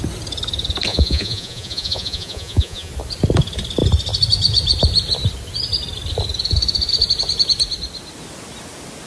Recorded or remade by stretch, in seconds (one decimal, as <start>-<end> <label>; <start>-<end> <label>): 0.0-0.9 recorded; 0.9-2.9 remade; 2.9-9.1 recorded